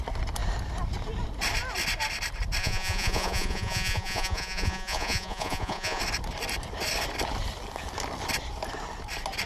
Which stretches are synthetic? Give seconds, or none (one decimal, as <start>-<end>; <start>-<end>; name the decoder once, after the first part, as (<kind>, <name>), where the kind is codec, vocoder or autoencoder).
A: 2.6-6.0 (vocoder, Vocos)